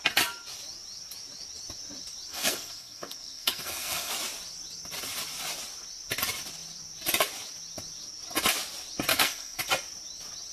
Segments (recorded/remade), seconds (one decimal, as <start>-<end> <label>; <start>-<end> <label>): 0.0-2.3 recorded; 2.3-4.1 remade; 4.1-9.1 recorded; 9.1-9.6 remade; 9.6-10.5 recorded